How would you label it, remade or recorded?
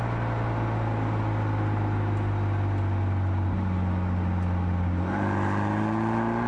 recorded